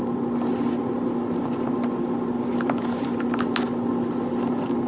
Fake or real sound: real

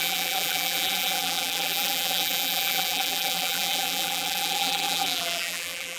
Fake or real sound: fake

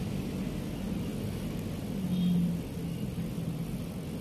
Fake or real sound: real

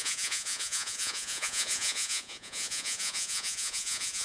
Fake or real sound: fake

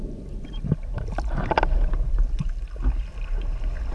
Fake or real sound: real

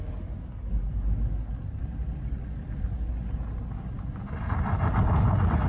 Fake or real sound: real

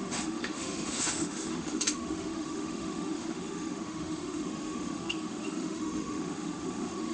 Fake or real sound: fake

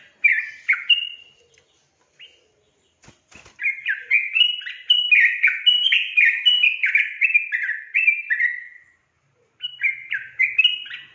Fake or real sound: real